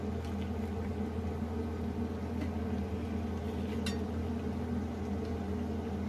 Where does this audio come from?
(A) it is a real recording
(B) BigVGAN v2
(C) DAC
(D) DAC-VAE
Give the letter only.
A